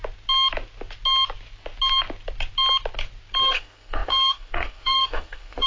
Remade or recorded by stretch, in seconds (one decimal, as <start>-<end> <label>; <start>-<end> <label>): 0.0-3.4 recorded; 3.4-5.7 remade